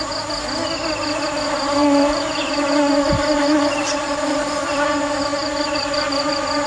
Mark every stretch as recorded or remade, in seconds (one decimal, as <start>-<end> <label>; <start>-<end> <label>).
0.0-1.8 recorded; 1.8-4.1 remade; 4.1-6.7 recorded